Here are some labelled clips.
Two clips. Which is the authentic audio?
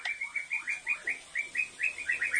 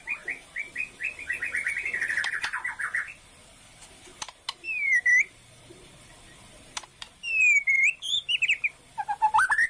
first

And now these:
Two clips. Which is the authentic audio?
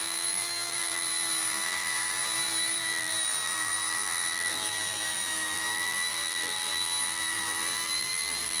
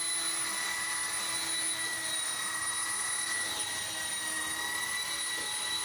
second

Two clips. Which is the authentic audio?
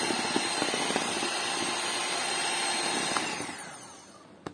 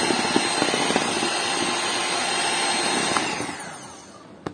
second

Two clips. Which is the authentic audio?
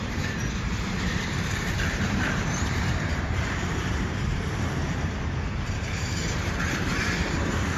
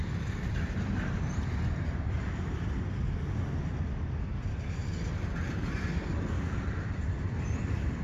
second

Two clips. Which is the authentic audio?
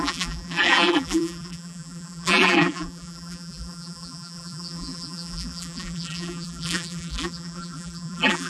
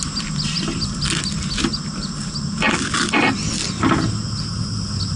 second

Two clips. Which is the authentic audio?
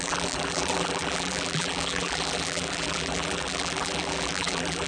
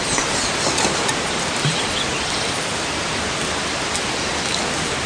second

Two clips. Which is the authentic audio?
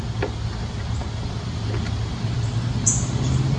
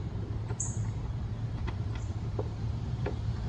first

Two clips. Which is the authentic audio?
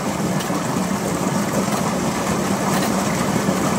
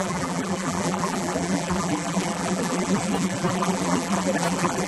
first